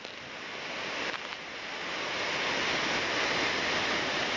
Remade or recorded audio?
recorded